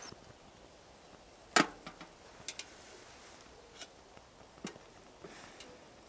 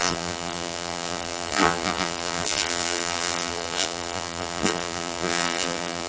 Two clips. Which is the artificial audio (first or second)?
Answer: second